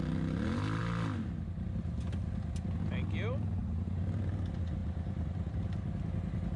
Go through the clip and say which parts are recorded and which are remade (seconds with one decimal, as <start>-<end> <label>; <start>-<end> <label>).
0.0-3.6 recorded; 3.6-4.3 remade; 4.3-6.6 recorded